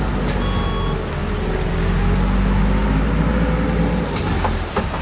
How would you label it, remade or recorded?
recorded